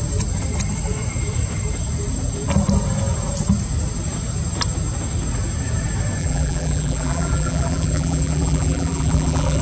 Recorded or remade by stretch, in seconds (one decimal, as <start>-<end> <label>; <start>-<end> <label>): 0.0-6.2 recorded; 6.2-9.6 remade